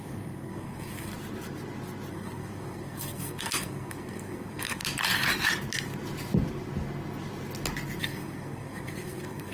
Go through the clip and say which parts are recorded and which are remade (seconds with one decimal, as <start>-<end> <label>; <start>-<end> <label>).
0.0-1.1 remade; 1.1-2.1 recorded; 2.1-4.8 remade; 4.8-8.0 recorded; 8.0-9.5 remade